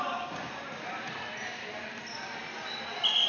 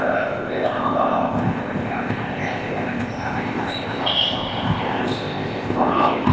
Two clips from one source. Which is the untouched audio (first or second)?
first